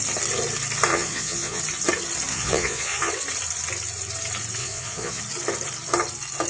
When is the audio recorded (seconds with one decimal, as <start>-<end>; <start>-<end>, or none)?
0.0-0.9; 1.6-2.3; 3.1-4.6; 5.2-6.5